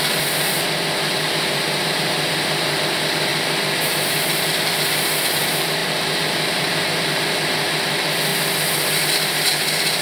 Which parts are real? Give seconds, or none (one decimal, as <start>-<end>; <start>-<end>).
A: 8.3-9.0

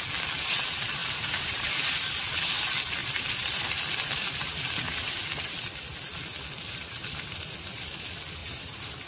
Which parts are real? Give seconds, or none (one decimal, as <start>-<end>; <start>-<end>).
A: 0.0-1.0; 1.7-3.0; 3.8-8.4

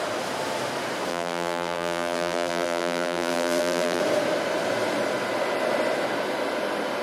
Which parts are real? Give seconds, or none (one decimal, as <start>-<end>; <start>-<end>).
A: 0.0-1.1; 4.0-7.0

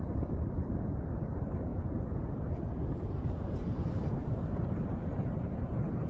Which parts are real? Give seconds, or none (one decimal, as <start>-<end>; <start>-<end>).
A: 1.7-2.9; 5.0-6.1

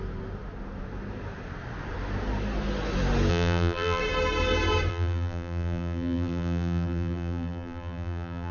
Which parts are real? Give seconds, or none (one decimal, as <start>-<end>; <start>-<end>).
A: 0.0-3.3; 4.0-4.9

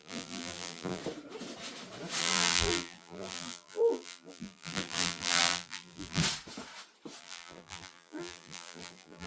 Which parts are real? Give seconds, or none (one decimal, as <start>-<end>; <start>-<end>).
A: 1.0-2.2; 6.2-7.2

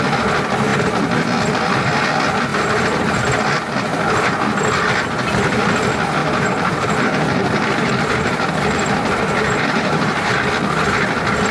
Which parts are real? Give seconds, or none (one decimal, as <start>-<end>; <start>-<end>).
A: 0.0-2.5; 3.4-6.2; 10.5-11.5